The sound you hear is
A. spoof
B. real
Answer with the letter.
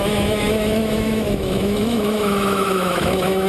A